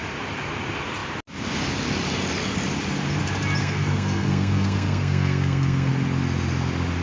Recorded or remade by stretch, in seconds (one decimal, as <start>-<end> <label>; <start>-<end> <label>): 0.0-3.6 recorded; 3.6-5.9 remade; 5.9-7.0 recorded